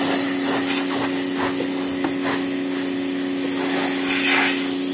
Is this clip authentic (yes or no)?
yes